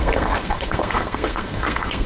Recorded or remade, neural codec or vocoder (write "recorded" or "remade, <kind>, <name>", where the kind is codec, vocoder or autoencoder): remade, codec, SNAC